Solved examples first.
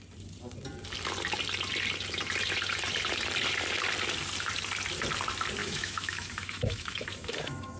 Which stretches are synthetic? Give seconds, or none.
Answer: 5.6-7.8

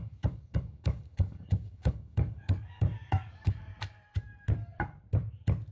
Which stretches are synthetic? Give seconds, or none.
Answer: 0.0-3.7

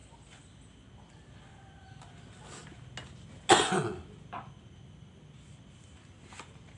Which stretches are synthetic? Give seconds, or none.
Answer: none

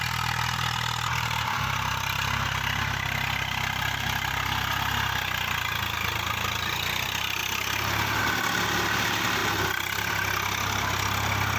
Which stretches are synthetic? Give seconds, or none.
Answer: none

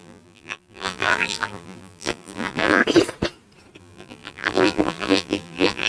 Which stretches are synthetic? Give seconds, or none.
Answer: 0.0-2.8; 3.8-5.9

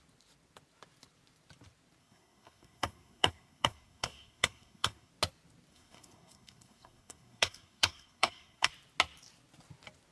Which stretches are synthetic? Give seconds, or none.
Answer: 2.0-5.1; 5.7-8.7

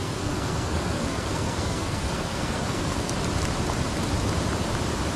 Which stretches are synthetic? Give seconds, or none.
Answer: 0.0-3.1

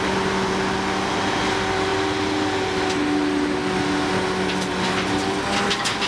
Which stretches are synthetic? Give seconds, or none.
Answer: none